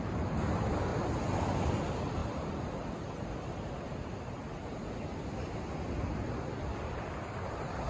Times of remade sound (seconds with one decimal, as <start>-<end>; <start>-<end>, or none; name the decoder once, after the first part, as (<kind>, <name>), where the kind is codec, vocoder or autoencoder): none